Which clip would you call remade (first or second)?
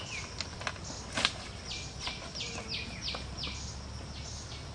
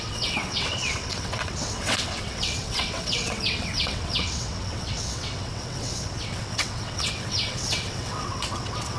second